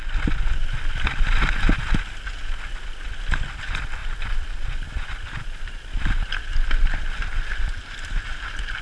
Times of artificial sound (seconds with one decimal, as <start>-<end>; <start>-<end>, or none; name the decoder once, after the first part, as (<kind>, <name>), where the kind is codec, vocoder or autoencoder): none

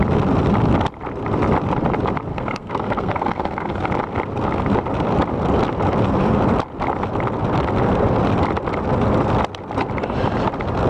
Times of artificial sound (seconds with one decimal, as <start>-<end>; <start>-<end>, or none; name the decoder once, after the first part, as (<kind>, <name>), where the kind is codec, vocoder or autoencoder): 2.3-3.9 (codec, SNAC)

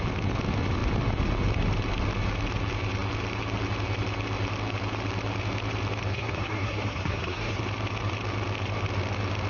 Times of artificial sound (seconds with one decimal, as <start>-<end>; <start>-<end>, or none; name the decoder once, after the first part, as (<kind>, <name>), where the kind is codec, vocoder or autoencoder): 6.1-7.6 (codec, SNAC)